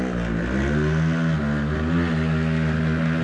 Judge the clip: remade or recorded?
recorded